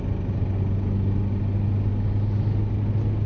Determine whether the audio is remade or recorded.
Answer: recorded